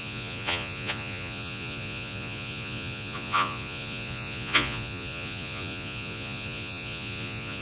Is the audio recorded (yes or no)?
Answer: no